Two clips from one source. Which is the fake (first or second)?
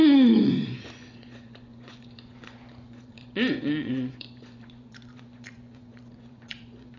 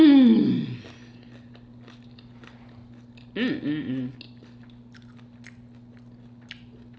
first